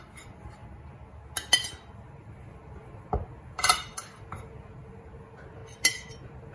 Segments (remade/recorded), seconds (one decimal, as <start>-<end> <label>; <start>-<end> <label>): 0.0-0.6 remade; 0.6-1.7 recorded; 1.7-5.6 remade; 5.6-6.1 recorded; 6.1-6.5 remade